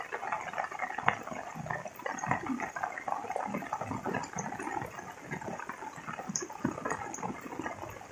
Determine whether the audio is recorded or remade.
recorded